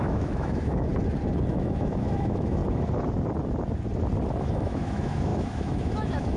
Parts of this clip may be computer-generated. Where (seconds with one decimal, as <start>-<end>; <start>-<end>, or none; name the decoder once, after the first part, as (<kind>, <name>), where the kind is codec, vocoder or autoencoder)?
0.0-0.9 (autoencoder, DAC-VAE); 1.5-2.6; 4.4-6.4